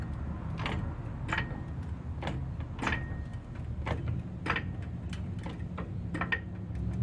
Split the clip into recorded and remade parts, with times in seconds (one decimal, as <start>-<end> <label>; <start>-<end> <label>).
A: 0.0-7.0 recorded